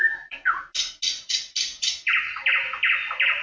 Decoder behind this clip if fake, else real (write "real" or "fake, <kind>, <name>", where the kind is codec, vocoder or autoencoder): real